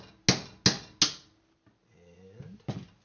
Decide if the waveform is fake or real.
real